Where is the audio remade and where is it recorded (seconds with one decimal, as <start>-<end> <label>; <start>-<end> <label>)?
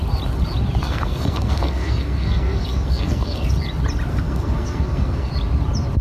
0.0-0.8 recorded; 0.8-3.5 remade; 3.5-4.1 recorded; 4.1-5.3 remade; 5.3-6.0 recorded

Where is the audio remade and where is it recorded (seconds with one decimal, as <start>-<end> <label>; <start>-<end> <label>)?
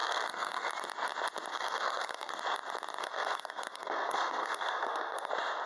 0.0-0.7 remade; 0.7-1.5 recorded; 1.5-2.3 remade; 2.3-3.0 recorded; 3.0-5.3 remade; 5.3-5.7 recorded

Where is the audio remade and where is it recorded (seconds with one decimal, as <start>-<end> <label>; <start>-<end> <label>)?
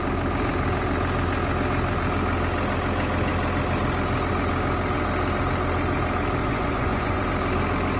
0.0-6.4 recorded; 6.4-7.2 remade; 7.2-8.0 recorded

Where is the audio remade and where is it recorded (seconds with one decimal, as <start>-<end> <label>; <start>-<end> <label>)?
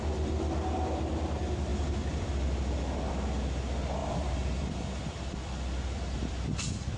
0.0-1.7 recorded; 1.7-2.3 remade; 2.3-4.0 recorded; 4.0-6.3 remade; 6.3-7.0 recorded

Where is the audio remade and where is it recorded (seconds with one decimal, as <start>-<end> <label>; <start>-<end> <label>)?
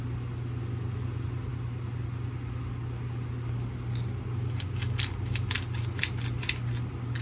0.0-7.2 recorded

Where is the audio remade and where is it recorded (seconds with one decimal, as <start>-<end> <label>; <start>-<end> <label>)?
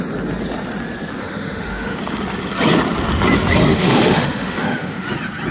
0.0-1.2 recorded; 1.2-2.0 remade; 2.0-3.6 recorded; 3.6-5.1 remade; 5.1-5.5 recorded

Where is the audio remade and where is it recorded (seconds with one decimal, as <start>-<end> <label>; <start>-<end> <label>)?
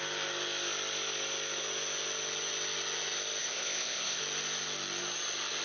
0.0-3.4 recorded; 3.4-4.2 remade; 4.2-5.6 recorded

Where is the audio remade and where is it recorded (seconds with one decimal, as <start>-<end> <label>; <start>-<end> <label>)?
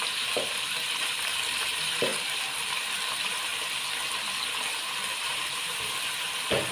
0.0-2.1 remade; 2.1-3.1 recorded; 3.1-3.5 remade; 3.5-5.2 recorded; 5.2-6.7 remade